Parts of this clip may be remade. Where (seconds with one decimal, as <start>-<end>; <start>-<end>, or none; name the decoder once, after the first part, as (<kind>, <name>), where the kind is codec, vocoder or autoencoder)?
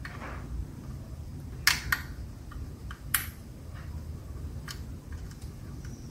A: 0.6-1.3 (vocoder, BigVGAN v2); 2.5-6.1